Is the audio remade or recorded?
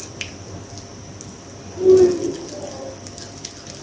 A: recorded